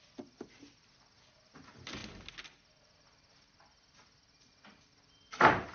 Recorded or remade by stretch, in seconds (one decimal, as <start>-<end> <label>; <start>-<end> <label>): 0.0-5.7 recorded

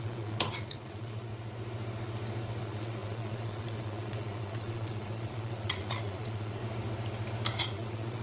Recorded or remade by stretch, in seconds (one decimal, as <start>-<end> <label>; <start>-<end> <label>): 0.0-1.3 remade; 1.3-2.6 recorded; 2.6-6.6 remade; 6.6-7.6 recorded; 7.6-8.2 remade

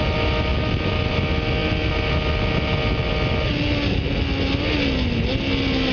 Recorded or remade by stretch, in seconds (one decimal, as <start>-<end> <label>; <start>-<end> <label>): 0.0-5.9 recorded

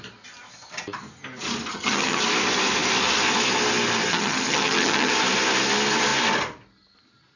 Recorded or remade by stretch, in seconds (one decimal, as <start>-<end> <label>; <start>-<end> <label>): 0.0-1.7 recorded; 1.7-2.2 remade; 2.2-4.1 recorded; 4.1-5.1 remade; 5.1-7.4 recorded

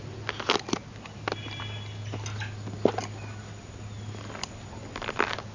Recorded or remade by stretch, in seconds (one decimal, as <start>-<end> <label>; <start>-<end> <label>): 0.0-5.5 recorded

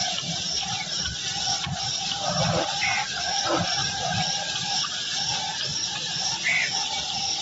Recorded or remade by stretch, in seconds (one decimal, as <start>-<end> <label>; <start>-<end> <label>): 0.0-1.0 remade; 1.0-1.7 recorded; 1.7-3.4 remade; 3.4-3.8 recorded; 3.8-4.7 remade; 4.7-7.4 recorded

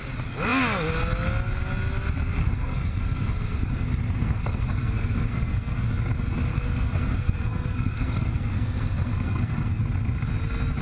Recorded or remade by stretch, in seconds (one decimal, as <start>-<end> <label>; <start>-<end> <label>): 0.0-2.4 recorded; 2.4-5.9 remade; 5.9-6.5 recorded; 6.5-9.8 remade; 9.8-10.8 recorded

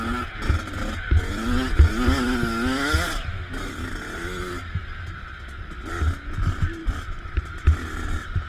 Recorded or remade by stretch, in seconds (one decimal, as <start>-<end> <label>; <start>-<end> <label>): 0.0-8.5 recorded